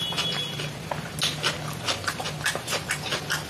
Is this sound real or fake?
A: real